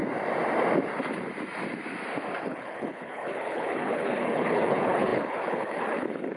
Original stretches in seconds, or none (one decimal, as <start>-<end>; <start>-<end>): 0.0-2.4